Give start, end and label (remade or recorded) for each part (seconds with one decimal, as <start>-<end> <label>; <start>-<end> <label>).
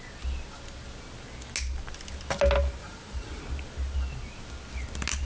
0.0-2.8 recorded; 2.8-3.4 remade; 3.4-5.3 recorded